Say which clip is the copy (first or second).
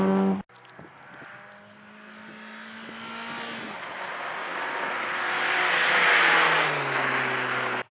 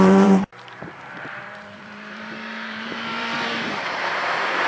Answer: second